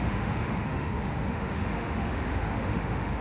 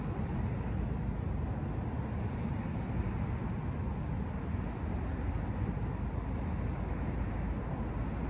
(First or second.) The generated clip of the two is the first